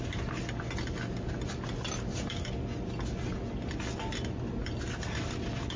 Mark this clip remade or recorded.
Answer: recorded